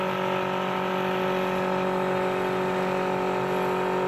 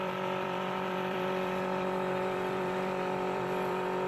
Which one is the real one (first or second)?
first